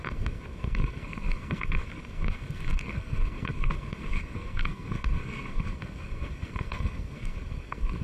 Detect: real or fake fake